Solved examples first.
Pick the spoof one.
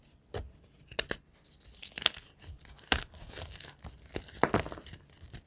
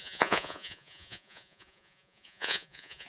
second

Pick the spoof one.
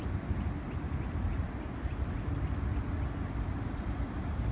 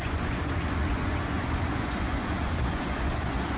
second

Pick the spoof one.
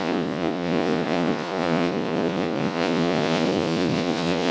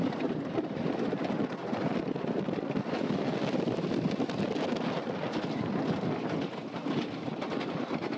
first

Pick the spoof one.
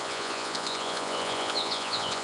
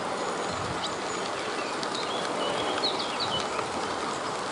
first